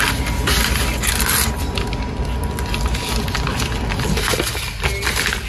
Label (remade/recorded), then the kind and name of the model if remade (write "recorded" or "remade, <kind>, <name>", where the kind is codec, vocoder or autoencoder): recorded